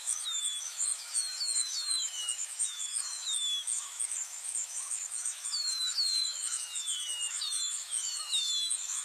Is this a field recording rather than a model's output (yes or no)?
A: no